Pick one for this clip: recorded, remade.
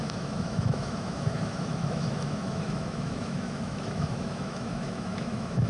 remade